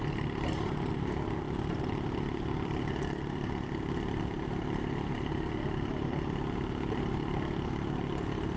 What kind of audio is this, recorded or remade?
recorded